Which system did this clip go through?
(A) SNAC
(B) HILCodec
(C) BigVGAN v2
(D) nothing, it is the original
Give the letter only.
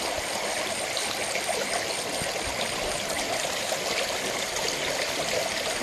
D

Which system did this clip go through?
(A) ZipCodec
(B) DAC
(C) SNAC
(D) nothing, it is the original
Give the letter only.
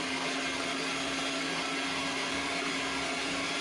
D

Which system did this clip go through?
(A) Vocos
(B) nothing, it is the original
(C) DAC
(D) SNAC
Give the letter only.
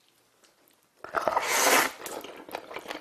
B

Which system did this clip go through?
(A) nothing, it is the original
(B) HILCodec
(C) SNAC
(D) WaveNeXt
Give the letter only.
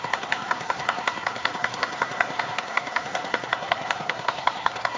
C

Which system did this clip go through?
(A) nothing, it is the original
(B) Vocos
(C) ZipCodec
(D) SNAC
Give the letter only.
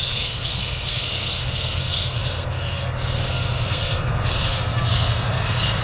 D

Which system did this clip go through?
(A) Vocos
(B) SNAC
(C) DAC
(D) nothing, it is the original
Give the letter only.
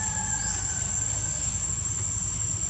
D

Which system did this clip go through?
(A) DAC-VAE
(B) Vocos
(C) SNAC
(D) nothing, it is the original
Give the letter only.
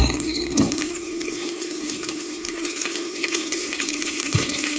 C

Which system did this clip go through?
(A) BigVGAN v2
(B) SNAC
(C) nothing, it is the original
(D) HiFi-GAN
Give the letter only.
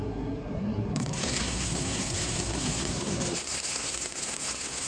B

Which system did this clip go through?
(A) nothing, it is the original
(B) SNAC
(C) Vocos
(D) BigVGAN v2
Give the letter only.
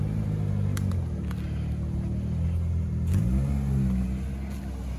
A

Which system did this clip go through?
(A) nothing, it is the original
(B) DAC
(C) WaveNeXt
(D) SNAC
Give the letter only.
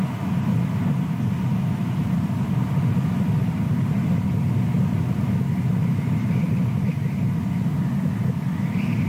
A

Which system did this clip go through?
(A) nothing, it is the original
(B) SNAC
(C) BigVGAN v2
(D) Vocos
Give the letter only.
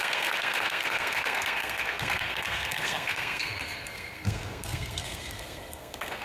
B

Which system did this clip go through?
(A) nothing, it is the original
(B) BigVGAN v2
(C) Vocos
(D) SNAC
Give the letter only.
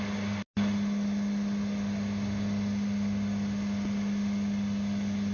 A